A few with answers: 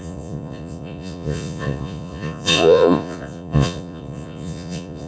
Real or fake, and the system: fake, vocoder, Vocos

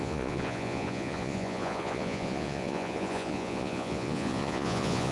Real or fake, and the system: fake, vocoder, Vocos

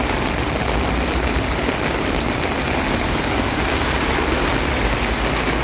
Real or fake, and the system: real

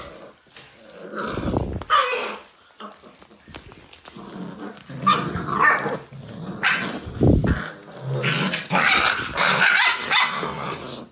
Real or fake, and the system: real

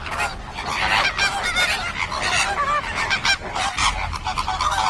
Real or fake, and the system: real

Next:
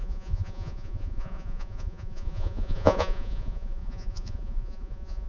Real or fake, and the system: fake, vocoder, Vocos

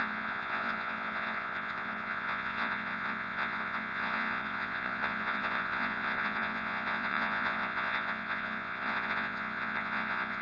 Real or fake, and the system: fake, vocoder, Vocos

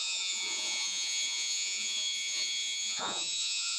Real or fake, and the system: fake, vocoder, Vocos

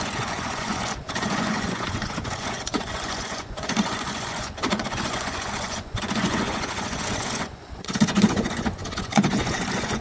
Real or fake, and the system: fake, vocoder, Vocos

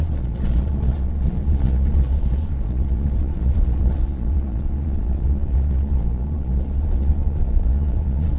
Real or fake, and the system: fake, vocoder, Vocos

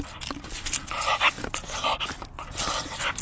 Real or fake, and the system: real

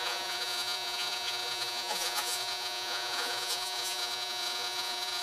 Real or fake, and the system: fake, vocoder, Vocos